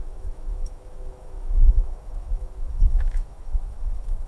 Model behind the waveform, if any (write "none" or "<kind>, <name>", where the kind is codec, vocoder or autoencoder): autoencoder, DAC-VAE